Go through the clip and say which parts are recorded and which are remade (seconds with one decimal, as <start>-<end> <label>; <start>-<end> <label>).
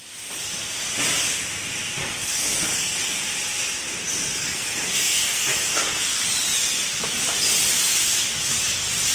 0.0-2.0 recorded; 2.0-3.2 remade; 3.2-4.4 recorded; 4.4-6.3 remade; 6.3-9.1 recorded